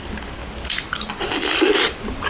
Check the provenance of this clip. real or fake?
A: real